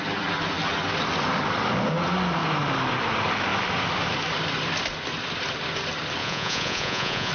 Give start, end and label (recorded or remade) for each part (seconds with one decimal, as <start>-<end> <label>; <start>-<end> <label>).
0.0-6.2 recorded; 6.2-7.3 remade